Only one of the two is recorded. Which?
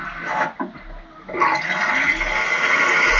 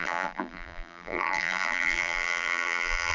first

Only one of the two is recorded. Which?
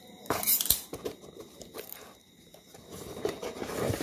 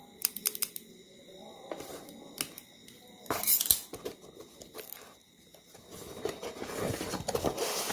second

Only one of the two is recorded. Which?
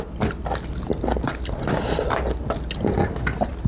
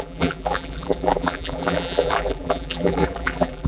first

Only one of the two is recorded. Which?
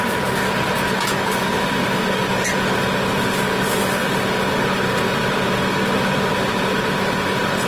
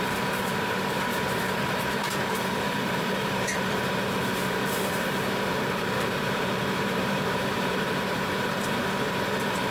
first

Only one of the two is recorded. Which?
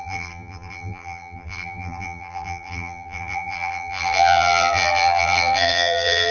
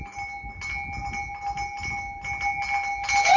second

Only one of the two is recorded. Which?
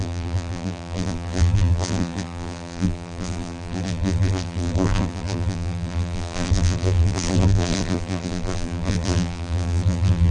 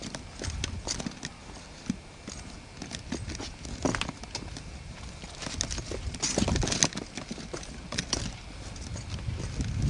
second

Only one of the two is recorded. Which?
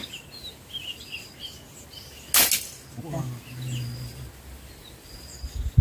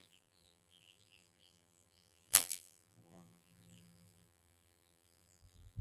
first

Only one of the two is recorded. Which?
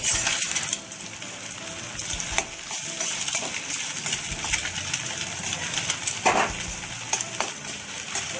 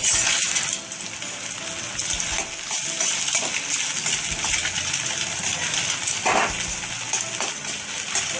second